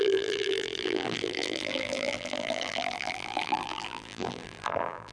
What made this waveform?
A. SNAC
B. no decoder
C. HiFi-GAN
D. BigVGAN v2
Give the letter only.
D